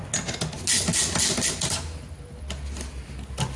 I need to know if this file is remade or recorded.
recorded